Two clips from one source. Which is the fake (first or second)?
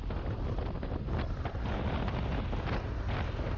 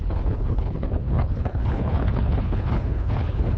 second